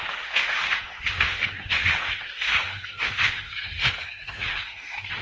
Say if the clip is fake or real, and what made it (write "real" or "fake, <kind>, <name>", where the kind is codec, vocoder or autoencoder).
fake, autoencoder, DAC-VAE